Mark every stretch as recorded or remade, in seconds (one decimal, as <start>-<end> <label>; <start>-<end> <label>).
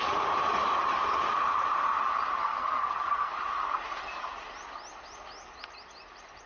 0.0-2.4 recorded; 2.4-3.3 remade; 3.3-6.5 recorded